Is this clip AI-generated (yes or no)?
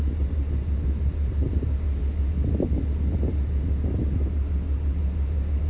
no